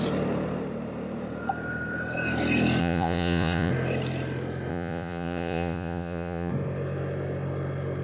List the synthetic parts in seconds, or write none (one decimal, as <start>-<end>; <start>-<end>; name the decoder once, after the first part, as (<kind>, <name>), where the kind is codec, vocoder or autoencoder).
2.8-3.7 (vocoder, Vocos); 4.7-6.5

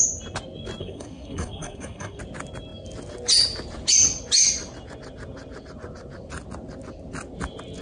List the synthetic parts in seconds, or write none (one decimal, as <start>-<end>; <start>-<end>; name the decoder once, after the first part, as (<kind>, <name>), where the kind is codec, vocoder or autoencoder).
0.8-2.2 (codec, SNAC)

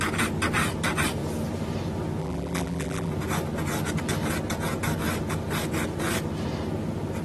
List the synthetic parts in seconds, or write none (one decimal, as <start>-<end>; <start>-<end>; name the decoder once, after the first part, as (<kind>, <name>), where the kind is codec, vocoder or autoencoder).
2.2-3.1 (vocoder, BigVGAN v2)